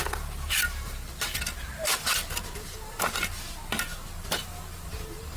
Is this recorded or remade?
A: recorded